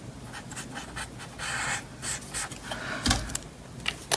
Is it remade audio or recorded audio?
recorded